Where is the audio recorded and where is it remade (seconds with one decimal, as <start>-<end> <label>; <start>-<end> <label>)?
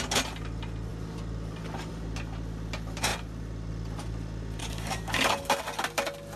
0.0-4.6 recorded; 4.6-5.6 remade; 5.6-6.4 recorded